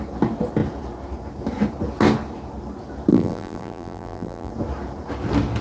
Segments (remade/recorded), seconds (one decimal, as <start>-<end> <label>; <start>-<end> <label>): 0.0-3.1 recorded; 3.1-4.5 remade; 4.5-5.6 recorded